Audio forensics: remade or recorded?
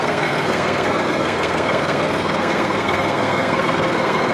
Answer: remade